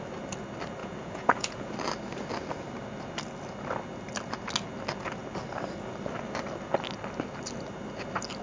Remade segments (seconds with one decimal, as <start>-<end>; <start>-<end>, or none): 0.8-1.7